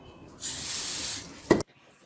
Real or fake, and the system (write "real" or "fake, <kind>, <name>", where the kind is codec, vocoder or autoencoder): real